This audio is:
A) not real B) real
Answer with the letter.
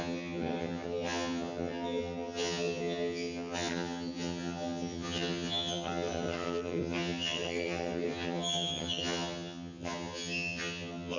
A